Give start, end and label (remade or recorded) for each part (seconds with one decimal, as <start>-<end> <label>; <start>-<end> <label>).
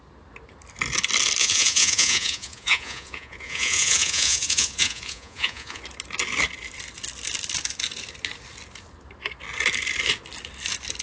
0.0-1.4 recorded; 1.4-5.8 remade; 5.8-11.0 recorded